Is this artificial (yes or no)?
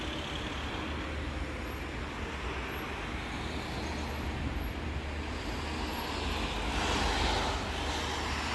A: no